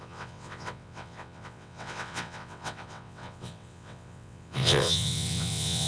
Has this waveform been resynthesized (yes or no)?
yes